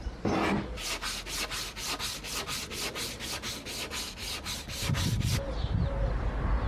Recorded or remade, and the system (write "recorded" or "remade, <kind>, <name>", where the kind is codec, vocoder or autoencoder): recorded